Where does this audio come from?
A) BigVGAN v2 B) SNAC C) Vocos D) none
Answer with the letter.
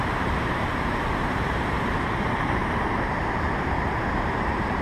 A